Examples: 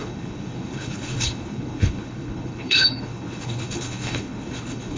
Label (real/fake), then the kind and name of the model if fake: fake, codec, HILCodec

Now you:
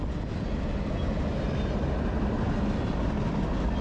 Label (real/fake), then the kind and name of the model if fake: real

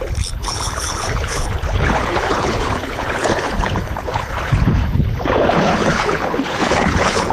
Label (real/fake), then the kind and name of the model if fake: fake, codec, HILCodec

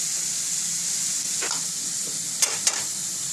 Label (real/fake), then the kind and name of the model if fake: real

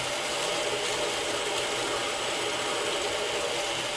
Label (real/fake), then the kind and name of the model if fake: real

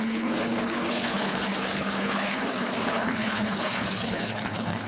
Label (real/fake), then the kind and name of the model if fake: fake, codec, HILCodec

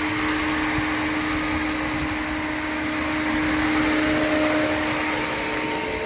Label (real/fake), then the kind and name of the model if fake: real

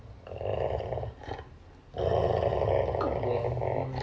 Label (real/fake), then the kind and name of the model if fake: real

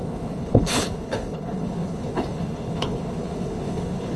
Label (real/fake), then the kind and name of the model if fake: fake, codec, HILCodec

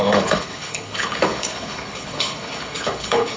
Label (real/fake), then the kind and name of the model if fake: fake, codec, HILCodec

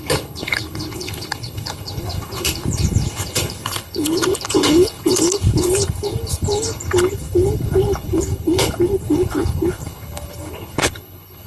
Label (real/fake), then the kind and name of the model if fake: fake, codec, HILCodec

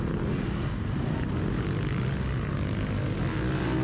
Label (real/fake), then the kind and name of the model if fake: real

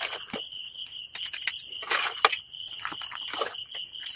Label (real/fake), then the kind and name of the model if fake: real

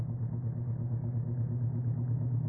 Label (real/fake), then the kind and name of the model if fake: real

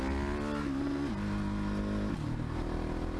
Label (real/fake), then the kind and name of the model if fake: real